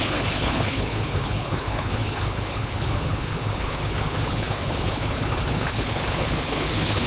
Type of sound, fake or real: fake